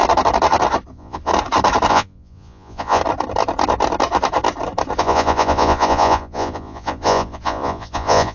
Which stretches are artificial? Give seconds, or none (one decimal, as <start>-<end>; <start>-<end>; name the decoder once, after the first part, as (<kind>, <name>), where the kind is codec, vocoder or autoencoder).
0.9-1.3 (vocoder, Vocos); 1.9-3.0; 5.0-8.3